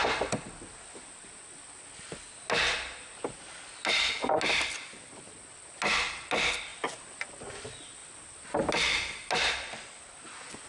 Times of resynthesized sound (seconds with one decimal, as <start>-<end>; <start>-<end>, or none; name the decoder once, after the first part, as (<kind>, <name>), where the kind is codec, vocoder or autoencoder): none